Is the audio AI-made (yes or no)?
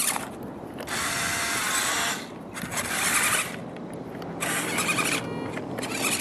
no